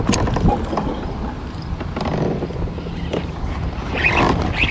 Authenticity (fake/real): real